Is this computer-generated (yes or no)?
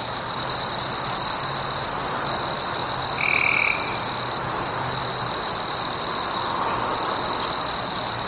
no